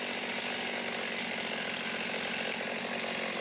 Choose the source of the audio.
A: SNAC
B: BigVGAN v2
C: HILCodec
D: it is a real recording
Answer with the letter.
D